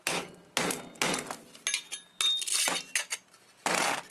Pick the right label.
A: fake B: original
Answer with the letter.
B